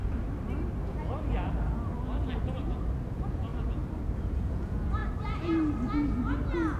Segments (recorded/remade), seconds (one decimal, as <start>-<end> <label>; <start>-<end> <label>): 0.0-3.1 recorded; 3.1-3.5 remade; 3.5-4.2 recorded; 4.2-5.0 remade; 5.0-6.8 recorded